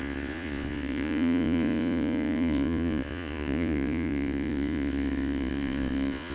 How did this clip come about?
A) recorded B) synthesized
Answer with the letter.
B